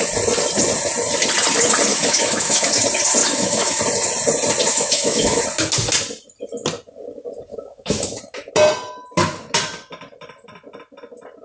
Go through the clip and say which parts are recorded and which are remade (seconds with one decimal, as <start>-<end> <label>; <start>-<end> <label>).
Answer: 0.0-1.9 recorded; 1.9-2.7 remade; 2.7-3.2 recorded; 3.2-3.8 remade; 3.8-4.7 recorded; 4.7-5.4 remade; 5.4-7.5 recorded; 7.5-8.2 remade; 8.2-11.4 recorded